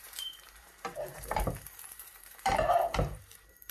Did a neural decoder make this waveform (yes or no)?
yes